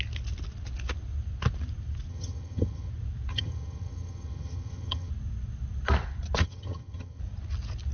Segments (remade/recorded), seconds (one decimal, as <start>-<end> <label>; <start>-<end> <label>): 0.0-2.1 recorded; 2.1-2.9 remade; 2.9-3.3 recorded; 3.3-5.1 remade; 5.1-6.4 recorded; 6.4-7.2 remade; 7.2-7.9 recorded